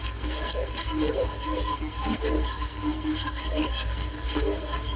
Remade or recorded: remade